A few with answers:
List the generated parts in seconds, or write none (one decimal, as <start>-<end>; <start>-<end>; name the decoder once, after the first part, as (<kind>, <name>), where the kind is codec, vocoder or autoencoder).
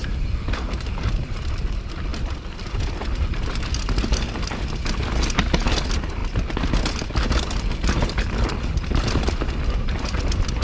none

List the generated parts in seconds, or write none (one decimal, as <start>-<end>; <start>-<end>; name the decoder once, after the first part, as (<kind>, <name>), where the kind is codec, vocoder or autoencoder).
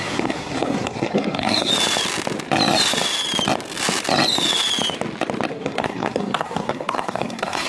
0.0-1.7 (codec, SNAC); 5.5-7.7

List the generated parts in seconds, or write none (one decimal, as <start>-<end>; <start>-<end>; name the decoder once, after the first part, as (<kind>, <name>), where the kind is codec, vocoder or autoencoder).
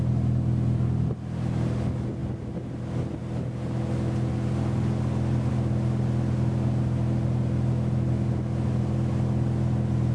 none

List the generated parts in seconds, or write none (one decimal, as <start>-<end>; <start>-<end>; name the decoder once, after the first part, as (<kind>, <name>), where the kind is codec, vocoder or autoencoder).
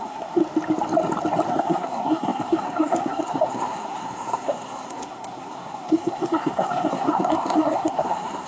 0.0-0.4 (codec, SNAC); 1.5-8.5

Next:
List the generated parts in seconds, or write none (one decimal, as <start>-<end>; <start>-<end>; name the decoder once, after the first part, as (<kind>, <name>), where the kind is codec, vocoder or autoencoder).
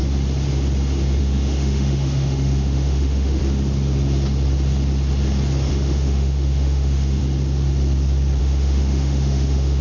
1.2-3.4 (autoencoder, DAC-VAE); 5.7-7.2; 8.4-9.8